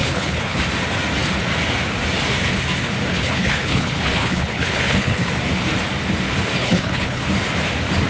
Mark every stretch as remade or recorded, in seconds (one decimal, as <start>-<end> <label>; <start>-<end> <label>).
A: 0.0-0.6 remade; 0.6-3.1 recorded; 3.1-5.3 remade; 5.3-6.6 recorded; 6.6-7.2 remade; 7.2-8.1 recorded